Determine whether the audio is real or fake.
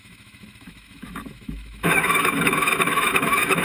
fake